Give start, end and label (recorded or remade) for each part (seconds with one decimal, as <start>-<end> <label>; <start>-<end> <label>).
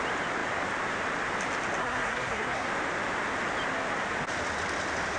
0.0-1.8 recorded; 1.8-2.7 remade; 2.7-5.2 recorded